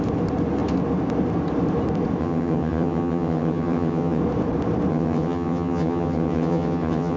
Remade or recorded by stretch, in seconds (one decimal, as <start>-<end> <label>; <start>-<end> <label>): 0.0-2.2 recorded; 2.2-4.2 remade; 4.2-4.9 recorded; 4.9-7.2 remade